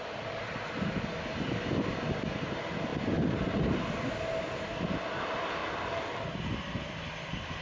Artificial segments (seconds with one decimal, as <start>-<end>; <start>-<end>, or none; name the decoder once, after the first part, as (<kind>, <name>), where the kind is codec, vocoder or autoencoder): none